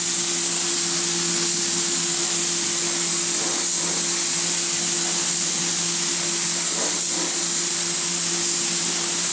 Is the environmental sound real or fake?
real